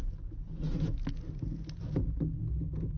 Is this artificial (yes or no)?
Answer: no